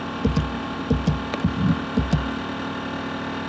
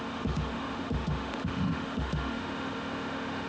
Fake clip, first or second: second